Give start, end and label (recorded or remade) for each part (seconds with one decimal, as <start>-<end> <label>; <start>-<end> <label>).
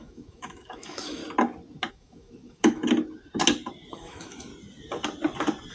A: 0.0-1.2 remade; 1.2-1.9 recorded; 1.9-2.8 remade; 2.8-3.9 recorded; 3.9-4.5 remade; 4.5-5.7 recorded